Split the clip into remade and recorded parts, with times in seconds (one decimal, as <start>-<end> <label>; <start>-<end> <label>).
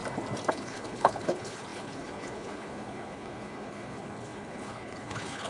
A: 0.0-0.5 recorded; 0.5-5.5 remade